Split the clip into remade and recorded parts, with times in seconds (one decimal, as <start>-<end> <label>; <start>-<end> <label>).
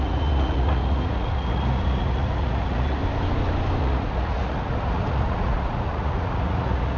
0.0-3.0 remade; 3.0-3.8 recorded; 3.8-7.0 remade